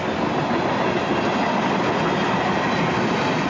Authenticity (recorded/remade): recorded